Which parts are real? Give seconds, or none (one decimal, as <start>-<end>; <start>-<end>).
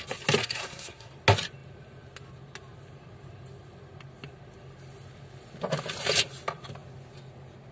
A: 0.0-0.4; 1.1-7.7